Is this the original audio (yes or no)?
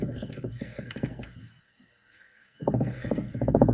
no